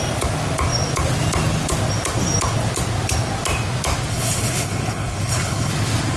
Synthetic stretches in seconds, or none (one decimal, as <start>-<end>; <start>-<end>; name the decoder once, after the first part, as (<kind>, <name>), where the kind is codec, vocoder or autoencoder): 4.1-5.7 (codec, HILCodec)